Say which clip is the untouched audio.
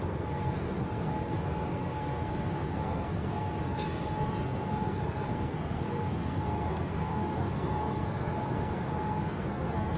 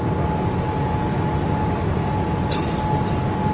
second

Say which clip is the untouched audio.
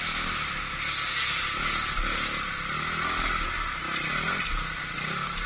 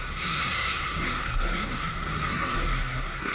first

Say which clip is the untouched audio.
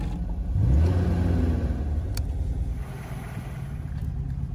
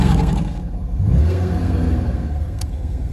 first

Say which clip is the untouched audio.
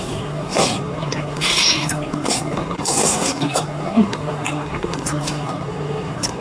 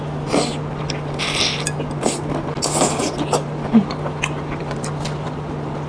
second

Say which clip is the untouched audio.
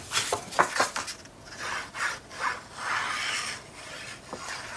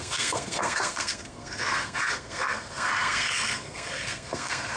first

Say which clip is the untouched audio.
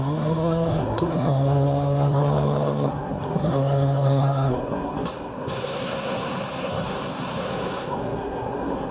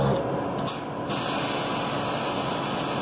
second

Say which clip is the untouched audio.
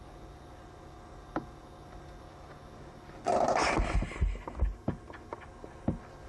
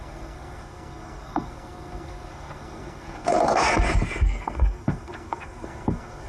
first